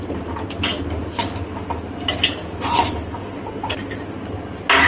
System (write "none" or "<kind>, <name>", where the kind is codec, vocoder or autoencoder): none